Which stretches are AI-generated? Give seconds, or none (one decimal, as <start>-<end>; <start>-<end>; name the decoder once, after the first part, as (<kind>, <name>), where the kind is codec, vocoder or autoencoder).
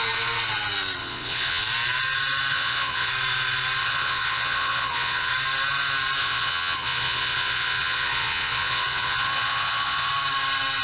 1.0-1.6 (vocoder, Vocos); 2.5-3.1; 3.8-5.3; 6.2-10.1